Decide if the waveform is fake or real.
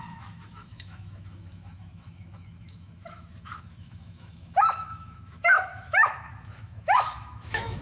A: fake